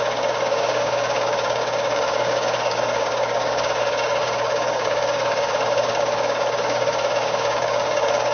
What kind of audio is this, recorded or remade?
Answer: remade